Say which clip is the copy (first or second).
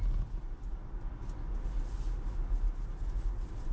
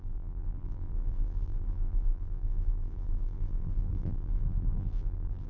second